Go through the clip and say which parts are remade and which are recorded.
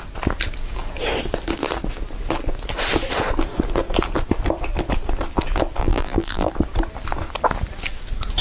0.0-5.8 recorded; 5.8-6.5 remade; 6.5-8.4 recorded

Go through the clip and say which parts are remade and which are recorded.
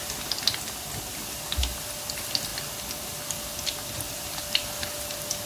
0.0-5.5 recorded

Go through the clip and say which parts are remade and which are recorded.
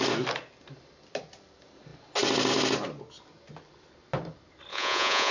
0.0-4.7 recorded; 4.7-5.3 remade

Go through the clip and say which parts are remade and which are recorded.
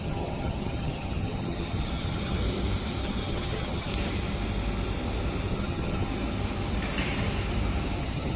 0.0-2.4 remade; 2.4-3.0 recorded; 3.0-3.9 remade; 3.9-5.5 recorded; 5.5-6.1 remade; 6.1-8.0 recorded; 8.0-8.4 remade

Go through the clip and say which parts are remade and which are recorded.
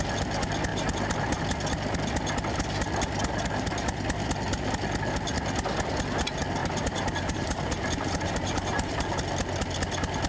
0.0-0.7 recorded; 0.7-1.4 remade; 1.4-6.6 recorded; 6.6-9.1 remade; 9.1-10.3 recorded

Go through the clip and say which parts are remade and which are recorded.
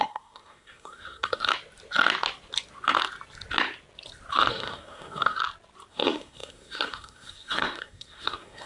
0.0-1.5 remade; 1.5-4.5 recorded; 4.5-5.4 remade; 5.4-5.9 recorded; 5.9-8.7 remade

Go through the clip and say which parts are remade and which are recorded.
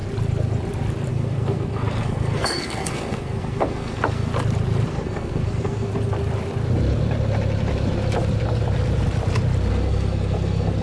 0.0-1.1 recorded; 1.1-4.3 remade; 4.3-4.9 recorded; 4.9-5.9 remade; 5.9-9.7 recorded; 9.7-10.8 remade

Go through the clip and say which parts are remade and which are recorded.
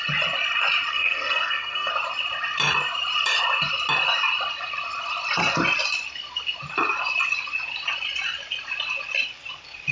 0.0-0.9 recorded; 0.9-1.9 remade; 1.9-9.9 recorded